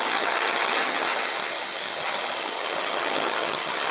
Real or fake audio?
fake